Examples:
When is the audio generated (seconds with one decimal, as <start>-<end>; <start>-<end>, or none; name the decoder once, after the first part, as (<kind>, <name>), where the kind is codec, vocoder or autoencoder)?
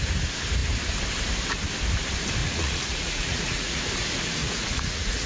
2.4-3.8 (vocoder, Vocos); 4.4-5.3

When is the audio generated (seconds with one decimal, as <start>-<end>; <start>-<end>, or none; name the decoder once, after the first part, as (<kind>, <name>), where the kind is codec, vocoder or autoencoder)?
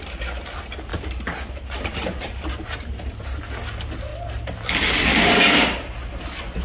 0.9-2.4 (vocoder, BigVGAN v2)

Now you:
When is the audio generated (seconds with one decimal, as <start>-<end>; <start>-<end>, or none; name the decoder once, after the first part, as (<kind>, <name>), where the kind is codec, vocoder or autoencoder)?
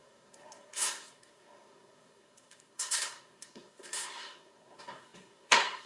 0.0-5.9 (codec, SNAC)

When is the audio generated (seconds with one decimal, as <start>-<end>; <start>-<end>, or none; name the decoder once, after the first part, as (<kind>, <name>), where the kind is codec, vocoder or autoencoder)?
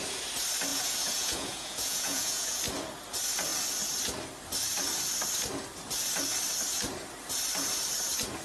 0.7-2.6 (vocoder, Vocos)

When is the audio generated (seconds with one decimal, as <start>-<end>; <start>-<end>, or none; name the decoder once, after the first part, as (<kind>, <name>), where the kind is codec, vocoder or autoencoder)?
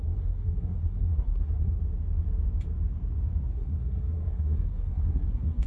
0.0-1.8 (codec, SNAC); 3.5-5.7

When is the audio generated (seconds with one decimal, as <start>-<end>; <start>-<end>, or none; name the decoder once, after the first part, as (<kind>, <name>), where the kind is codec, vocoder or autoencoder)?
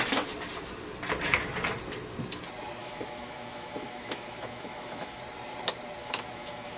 2.8-5.2 (autoencoder, DAC-VAE); 6.0-6.8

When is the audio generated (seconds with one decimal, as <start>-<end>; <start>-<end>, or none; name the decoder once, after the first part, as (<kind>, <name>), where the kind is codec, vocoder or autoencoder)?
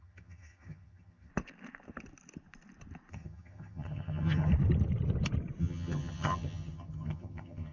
0.0-1.3 (vocoder, HiFi-GAN); 3.1-4.5; 5.6-7.7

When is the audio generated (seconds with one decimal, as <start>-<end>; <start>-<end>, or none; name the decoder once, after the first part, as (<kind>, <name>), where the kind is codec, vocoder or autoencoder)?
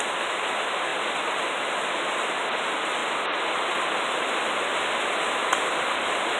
none